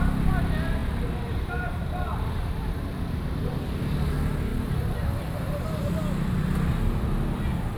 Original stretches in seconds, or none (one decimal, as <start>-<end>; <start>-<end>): 0.0-0.8; 3.8-4.5; 5.9-7.8

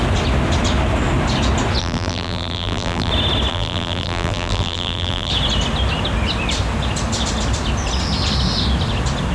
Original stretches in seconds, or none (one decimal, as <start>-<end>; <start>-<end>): 0.0-1.8; 3.1-3.5; 5.3-9.3

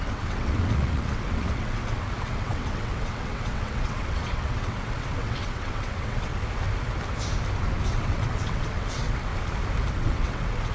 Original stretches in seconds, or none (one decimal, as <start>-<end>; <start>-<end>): 6.3-7.9; 9.3-9.9

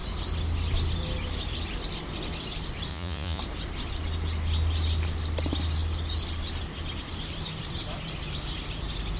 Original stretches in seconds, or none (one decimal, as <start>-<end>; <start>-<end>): 0.0-2.9; 3.4-9.2

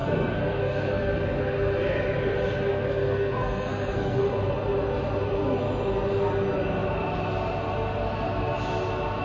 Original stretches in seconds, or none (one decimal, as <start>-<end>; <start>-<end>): 1.4-2.7; 4.2-9.2

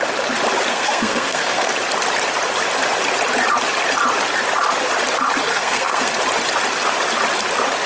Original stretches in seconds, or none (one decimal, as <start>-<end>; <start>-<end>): 0.0-0.7; 1.7-5.5; 6.2-7.9

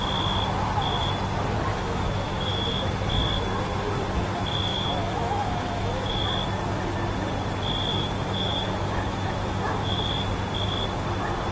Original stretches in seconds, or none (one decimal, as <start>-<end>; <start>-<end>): 0.0-1.7; 2.9-4.7; 6.2-7.9; 10.0-11.5